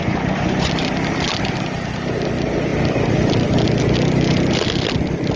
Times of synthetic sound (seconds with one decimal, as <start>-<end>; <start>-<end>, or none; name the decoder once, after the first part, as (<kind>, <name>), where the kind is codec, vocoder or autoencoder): 0.0-0.7 (vocoder, Vocos)